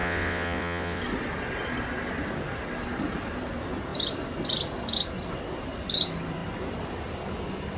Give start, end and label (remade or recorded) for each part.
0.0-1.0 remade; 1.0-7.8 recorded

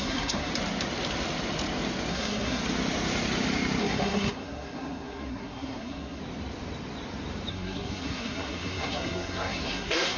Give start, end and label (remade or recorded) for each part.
0.0-0.5 remade; 0.5-2.1 recorded; 2.1-2.6 remade; 2.6-3.8 recorded; 3.8-6.2 remade; 6.2-7.5 recorded; 7.5-10.2 remade

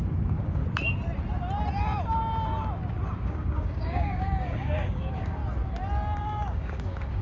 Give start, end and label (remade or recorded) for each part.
0.0-0.6 remade; 0.6-3.1 recorded; 3.1-5.4 remade; 5.4-6.2 recorded; 6.2-7.2 remade

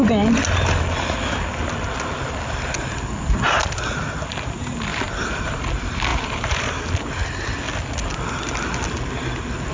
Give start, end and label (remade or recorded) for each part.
0.0-4.9 recorded; 4.9-5.6 remade; 5.6-6.1 recorded; 6.1-6.7 remade; 6.7-9.7 recorded